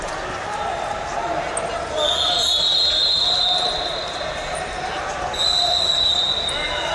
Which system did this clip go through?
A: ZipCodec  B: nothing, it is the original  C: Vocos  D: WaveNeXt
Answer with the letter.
B